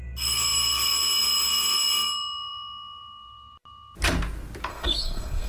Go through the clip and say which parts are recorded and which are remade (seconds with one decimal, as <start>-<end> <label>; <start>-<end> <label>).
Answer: 0.0-4.7 recorded; 4.7-5.5 remade